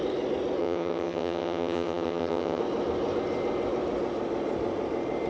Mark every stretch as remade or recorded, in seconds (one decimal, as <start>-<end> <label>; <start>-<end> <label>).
0.0-0.6 recorded; 0.6-2.6 remade; 2.6-5.3 recorded